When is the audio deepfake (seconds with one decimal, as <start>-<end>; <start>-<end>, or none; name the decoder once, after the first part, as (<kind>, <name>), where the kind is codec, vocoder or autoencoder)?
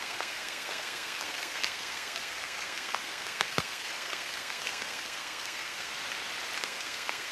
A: 0.0-5.9 (codec, SNAC); 6.6-7.3